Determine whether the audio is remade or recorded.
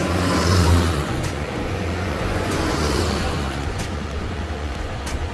remade